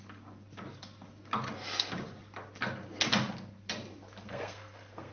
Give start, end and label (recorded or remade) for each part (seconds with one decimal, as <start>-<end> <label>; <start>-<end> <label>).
0.0-4.2 recorded; 4.2-5.1 remade